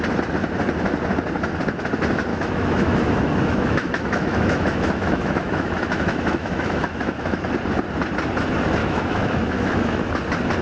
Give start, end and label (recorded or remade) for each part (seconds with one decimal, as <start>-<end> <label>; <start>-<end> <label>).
0.0-2.3 recorded; 2.3-7.5 remade; 7.5-8.8 recorded; 8.8-10.1 remade; 10.1-10.6 recorded